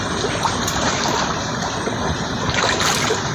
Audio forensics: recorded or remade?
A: remade